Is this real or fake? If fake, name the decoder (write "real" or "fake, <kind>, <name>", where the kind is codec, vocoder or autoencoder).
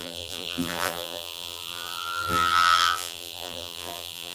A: fake, vocoder, BigVGAN v2